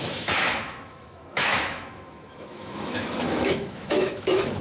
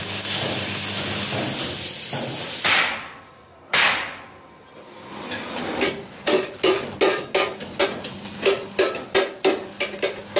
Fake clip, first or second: first